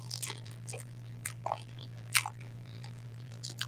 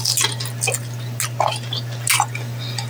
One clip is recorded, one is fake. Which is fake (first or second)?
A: first